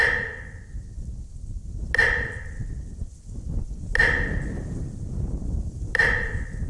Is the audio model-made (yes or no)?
no